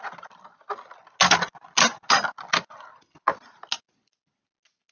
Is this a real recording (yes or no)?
yes